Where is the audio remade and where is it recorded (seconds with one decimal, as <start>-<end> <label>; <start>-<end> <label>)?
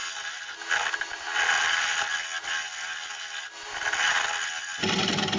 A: 0.0-5.4 recorded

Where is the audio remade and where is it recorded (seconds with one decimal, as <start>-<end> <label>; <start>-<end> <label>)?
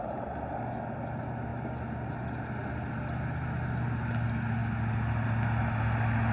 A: 0.0-6.3 recorded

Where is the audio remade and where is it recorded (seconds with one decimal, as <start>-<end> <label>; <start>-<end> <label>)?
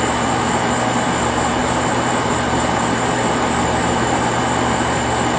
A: 0.0-1.6 recorded; 1.6-4.4 remade; 4.4-5.4 recorded